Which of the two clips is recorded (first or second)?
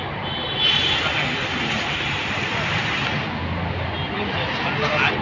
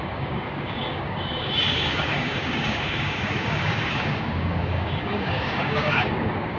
first